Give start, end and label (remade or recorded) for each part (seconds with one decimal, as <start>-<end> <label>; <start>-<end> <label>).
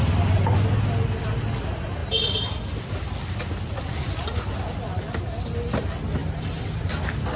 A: 0.0-7.4 recorded